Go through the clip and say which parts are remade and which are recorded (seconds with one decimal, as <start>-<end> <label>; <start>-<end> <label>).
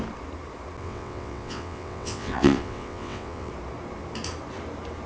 0.0-0.8 recorded; 0.8-3.5 remade; 3.5-5.1 recorded